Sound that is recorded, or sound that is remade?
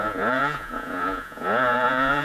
remade